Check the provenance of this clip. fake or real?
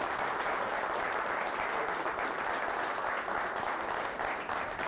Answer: real